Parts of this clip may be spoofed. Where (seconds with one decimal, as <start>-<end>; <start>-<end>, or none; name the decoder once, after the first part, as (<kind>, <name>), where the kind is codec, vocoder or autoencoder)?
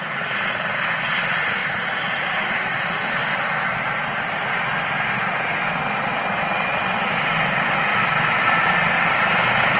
1.6-5.8 (vocoder, BigVGAN v2); 7.9-9.2